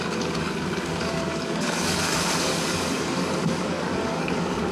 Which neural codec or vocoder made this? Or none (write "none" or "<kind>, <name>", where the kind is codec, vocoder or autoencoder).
codec, DAC